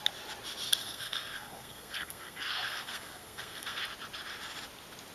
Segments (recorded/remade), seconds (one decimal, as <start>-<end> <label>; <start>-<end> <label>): 0.0-0.8 recorded; 0.8-3.8 remade; 3.8-5.1 recorded